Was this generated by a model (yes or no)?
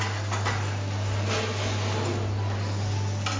no